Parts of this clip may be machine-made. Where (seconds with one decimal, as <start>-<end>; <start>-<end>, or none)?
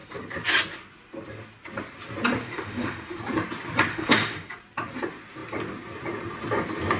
2.4-3.2; 3.9-4.5